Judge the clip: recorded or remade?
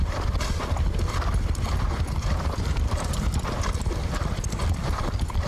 recorded